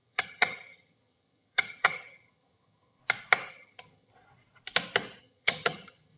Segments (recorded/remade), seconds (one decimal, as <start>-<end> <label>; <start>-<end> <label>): 0.0-3.0 remade; 3.0-3.5 recorded; 3.5-4.1 remade; 4.1-5.2 recorded; 5.2-6.2 remade